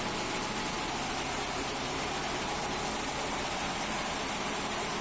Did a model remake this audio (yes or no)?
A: no